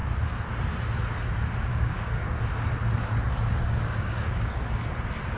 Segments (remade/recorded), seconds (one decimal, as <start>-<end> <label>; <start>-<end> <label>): 0.0-1.7 recorded; 1.7-2.4 remade; 2.4-3.5 recorded; 3.5-4.5 remade; 4.5-5.4 recorded